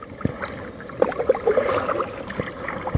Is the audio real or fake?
real